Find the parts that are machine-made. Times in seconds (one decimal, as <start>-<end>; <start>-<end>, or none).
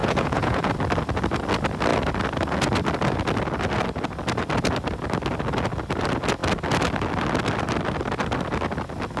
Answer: 0.0-0.7